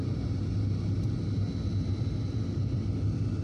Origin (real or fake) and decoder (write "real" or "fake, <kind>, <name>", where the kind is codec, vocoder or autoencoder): real